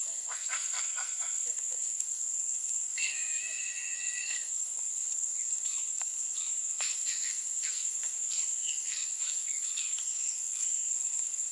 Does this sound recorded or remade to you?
remade